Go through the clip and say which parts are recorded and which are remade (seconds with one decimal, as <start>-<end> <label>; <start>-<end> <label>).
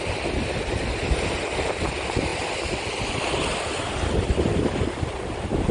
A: 0.0-5.7 recorded